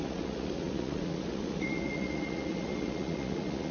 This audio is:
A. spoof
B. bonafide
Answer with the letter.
A